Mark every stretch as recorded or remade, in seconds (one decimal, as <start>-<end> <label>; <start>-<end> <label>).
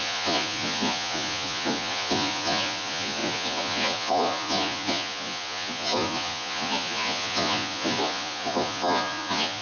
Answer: 0.0-9.6 remade